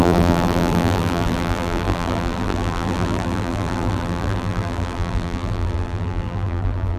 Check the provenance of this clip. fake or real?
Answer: fake